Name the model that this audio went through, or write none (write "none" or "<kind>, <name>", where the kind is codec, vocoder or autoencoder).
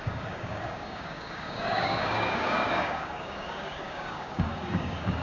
codec, DAC